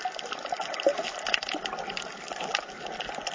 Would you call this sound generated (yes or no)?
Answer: no